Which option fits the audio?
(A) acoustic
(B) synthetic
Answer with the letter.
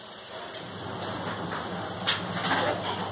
A